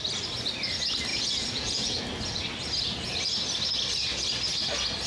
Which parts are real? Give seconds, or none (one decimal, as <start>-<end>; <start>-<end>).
0.0-1.1; 2.0-5.1